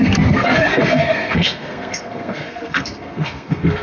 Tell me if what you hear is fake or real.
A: fake